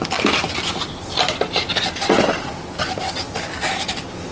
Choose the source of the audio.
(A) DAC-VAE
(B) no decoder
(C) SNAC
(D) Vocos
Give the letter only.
B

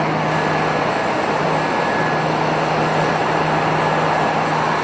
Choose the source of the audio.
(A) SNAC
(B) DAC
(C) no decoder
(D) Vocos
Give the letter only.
C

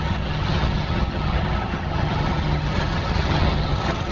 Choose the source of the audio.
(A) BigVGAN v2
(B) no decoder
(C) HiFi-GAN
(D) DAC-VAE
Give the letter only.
C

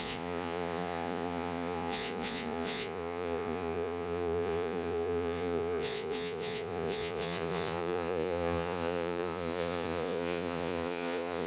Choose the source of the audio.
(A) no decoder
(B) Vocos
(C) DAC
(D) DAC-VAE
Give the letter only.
B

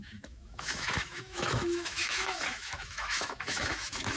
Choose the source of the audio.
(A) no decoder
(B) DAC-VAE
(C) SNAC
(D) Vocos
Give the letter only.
B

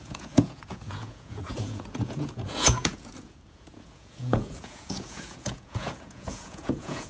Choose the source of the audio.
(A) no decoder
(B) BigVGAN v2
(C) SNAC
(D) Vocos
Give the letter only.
D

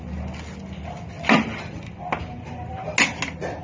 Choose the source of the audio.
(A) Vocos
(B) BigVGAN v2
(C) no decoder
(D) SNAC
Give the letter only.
C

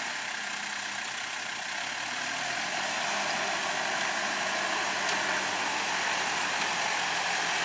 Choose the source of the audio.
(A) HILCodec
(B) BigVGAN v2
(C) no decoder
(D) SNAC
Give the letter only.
C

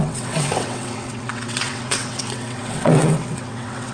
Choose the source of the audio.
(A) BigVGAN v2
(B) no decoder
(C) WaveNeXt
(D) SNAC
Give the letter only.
C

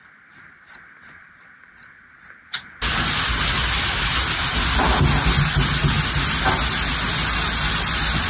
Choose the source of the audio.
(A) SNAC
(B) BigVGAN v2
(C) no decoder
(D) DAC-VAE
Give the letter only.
C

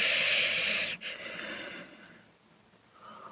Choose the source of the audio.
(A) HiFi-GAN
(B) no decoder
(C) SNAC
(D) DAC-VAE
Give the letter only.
B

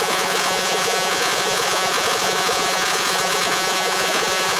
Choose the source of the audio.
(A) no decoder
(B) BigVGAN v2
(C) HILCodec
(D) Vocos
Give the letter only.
D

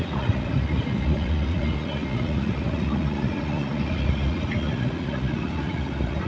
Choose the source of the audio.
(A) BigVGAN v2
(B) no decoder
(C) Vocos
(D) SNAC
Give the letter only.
C